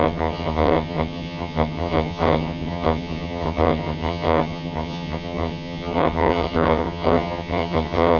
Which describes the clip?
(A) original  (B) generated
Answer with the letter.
B